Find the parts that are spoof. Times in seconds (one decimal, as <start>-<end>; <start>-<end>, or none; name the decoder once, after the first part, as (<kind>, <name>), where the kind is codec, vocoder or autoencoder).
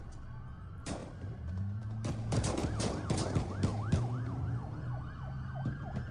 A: 1.0-1.8 (vocoder, BigVGAN v2); 2.6-3.2; 3.7-4.4